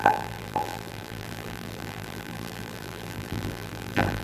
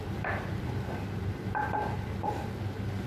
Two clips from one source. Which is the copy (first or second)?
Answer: first